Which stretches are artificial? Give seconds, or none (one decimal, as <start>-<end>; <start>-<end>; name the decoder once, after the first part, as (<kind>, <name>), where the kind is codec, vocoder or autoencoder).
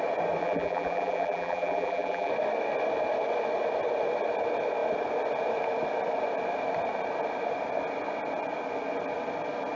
0.4-2.3 (vocoder, BigVGAN v2)